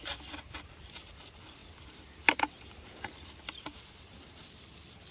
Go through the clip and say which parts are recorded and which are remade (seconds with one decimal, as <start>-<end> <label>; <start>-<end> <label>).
0.0-3.7 recorded; 3.7-4.4 remade; 4.4-5.1 recorded